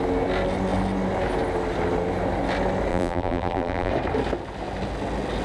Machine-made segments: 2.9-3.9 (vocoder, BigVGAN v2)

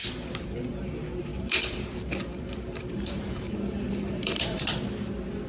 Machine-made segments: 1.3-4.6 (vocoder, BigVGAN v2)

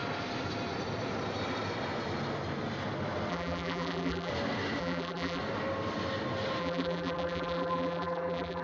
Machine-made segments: 3.3-4.3 (vocoder, BigVGAN v2); 4.8-5.4; 6.6-8.6